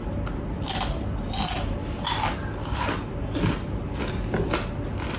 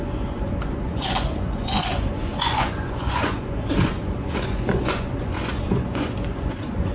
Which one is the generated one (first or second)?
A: second